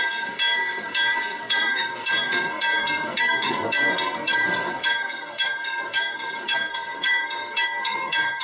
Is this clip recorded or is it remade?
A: remade